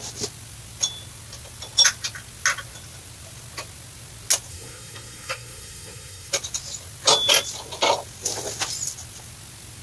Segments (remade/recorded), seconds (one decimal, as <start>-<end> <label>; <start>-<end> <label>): 0.0-4.5 recorded; 4.5-6.3 remade; 6.3-9.8 recorded